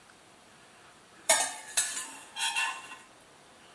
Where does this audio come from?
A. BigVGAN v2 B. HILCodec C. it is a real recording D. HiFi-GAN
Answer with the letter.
A